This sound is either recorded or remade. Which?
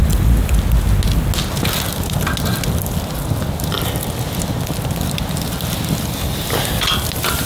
recorded